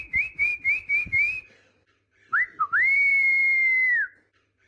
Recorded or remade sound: remade